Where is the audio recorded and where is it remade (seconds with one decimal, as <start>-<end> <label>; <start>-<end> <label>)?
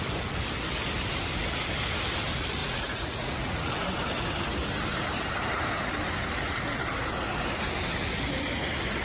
0.0-2.6 recorded; 2.6-3.7 remade; 3.7-9.0 recorded